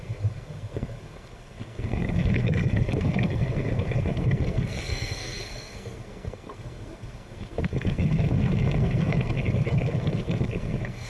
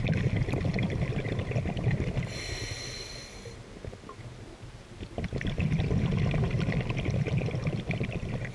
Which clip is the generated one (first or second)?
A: first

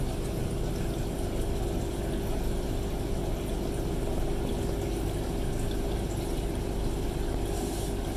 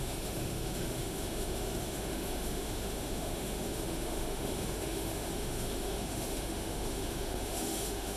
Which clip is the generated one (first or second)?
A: second